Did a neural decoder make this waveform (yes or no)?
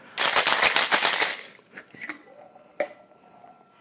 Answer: no